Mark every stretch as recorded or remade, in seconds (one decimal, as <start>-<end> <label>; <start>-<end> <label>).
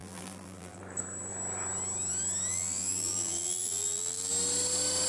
0.0-0.8 remade; 0.8-2.5 recorded; 2.5-4.3 remade; 4.3-5.1 recorded